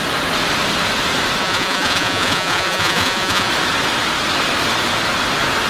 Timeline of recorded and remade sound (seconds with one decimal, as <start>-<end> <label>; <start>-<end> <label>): 0.0-1.4 recorded; 1.4-3.5 remade; 3.5-5.7 recorded